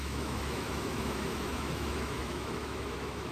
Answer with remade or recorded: remade